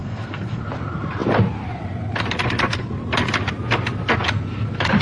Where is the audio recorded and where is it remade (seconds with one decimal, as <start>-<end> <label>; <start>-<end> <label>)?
0.0-0.6 remade; 0.6-5.0 recorded